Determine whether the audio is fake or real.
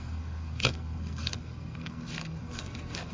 fake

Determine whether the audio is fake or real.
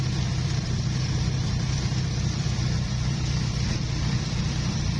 fake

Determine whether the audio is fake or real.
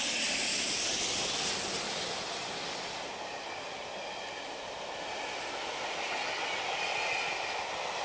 real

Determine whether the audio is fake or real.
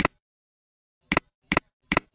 real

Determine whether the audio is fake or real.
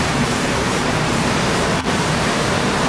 fake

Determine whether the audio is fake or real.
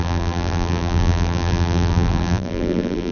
fake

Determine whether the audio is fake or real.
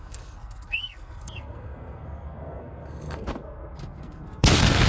fake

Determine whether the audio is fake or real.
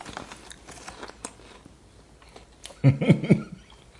real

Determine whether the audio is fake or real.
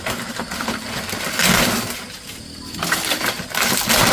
real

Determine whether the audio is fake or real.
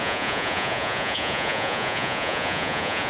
fake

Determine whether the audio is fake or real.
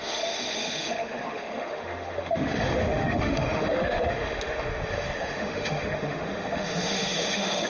fake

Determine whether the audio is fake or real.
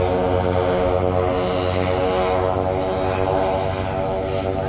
real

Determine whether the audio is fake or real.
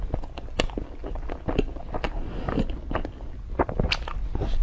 real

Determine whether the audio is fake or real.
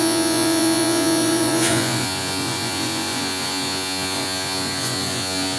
fake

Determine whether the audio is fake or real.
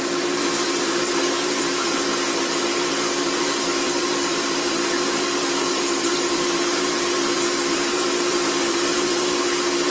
fake